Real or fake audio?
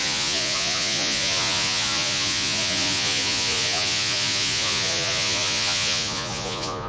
fake